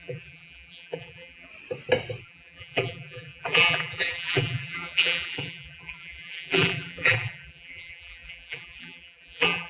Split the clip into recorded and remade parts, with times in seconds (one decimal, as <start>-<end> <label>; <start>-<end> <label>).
0.0-1.5 remade; 1.5-2.2 recorded; 2.2-9.7 remade